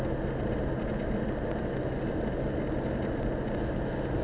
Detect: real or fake real